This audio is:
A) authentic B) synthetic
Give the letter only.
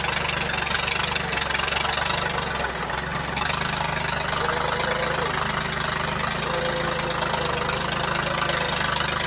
A